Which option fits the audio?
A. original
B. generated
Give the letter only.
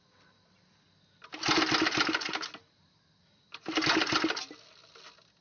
A